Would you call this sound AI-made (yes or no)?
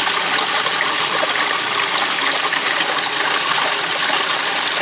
no